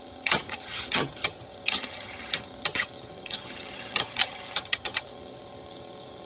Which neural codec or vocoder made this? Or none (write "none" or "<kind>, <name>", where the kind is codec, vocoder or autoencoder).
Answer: vocoder, HiFi-GAN